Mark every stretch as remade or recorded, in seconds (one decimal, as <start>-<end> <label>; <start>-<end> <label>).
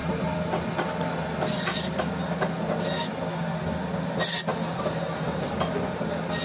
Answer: 0.0-4.5 recorded; 4.5-5.5 remade; 5.5-6.4 recorded